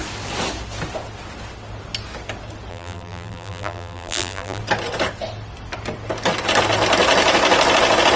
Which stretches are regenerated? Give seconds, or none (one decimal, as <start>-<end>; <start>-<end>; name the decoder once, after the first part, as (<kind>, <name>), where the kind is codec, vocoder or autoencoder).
2.7-4.6 (vocoder, BigVGAN v2)